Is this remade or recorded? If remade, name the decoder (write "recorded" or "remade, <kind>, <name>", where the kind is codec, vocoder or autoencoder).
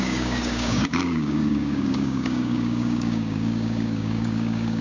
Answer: remade, codec, DAC